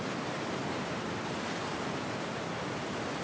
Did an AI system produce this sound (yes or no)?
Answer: no